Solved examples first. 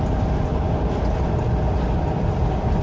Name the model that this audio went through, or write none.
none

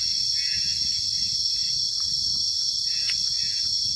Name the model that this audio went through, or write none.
none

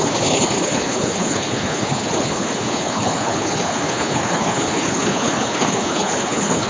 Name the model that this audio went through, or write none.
codec, HILCodec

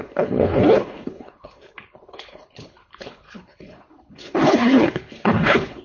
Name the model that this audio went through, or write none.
codec, HILCodec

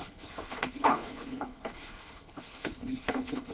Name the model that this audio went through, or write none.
codec, HILCodec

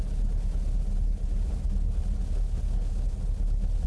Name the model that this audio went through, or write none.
none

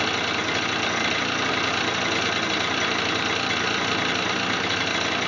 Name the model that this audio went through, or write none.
none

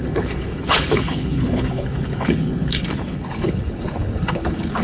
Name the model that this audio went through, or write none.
codec, HILCodec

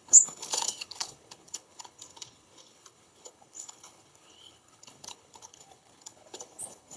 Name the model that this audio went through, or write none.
codec, HILCodec